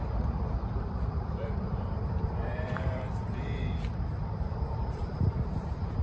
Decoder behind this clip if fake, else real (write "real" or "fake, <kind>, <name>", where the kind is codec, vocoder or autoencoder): fake, vocoder, BigVGAN v2